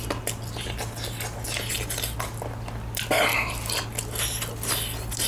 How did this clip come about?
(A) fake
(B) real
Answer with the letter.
B